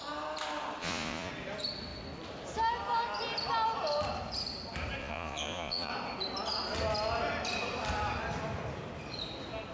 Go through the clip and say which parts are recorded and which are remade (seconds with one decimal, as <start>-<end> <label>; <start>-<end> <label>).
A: 0.0-0.8 recorded; 0.8-1.3 remade; 1.3-5.0 recorded; 5.0-5.9 remade; 5.9-9.7 recorded